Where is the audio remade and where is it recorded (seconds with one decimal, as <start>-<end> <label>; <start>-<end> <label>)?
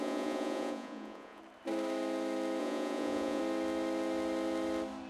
0.0-1.4 remade; 1.4-2.6 recorded; 2.6-3.4 remade; 3.4-5.1 recorded